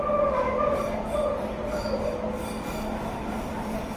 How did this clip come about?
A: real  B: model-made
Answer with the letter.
A